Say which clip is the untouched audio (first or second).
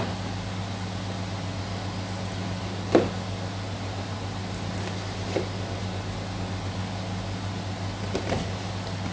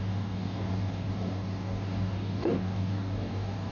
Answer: first